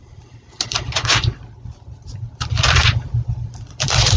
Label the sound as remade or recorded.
remade